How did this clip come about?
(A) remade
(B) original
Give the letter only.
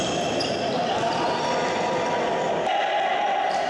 B